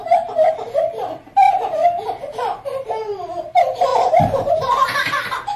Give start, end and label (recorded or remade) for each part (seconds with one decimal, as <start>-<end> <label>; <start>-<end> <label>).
0.0-3.9 remade; 3.9-4.5 recorded; 4.5-5.6 remade